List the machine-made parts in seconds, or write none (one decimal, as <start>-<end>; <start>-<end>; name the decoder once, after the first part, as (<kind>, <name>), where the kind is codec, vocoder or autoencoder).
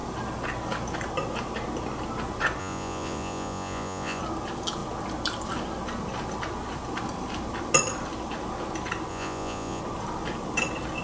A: 2.6-4.2 (vocoder, Vocos); 9.1-9.8